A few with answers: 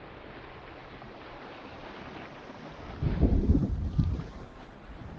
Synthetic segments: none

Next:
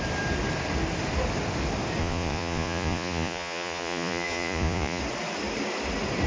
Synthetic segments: 2.0-5.0 (vocoder, Vocos)

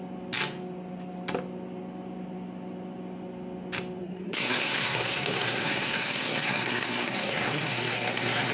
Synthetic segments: 4.0-8.5 (codec, SNAC)

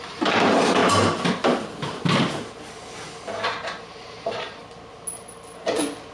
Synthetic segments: 0.0-0.8 (vocoder, BigVGAN v2); 4.0-4.6

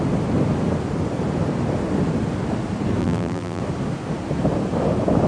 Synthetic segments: 3.0-3.6 (vocoder, BigVGAN v2)

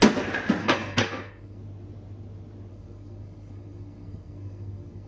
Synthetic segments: 0.6-1.6 (codec, SNAC); 2.7-5.1

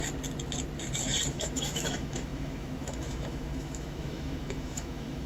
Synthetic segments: 1.3-5.3 (autoencoder, DAC-VAE)

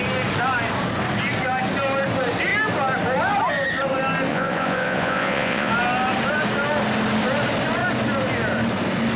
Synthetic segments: 4.3-5.7 (vocoder, Vocos)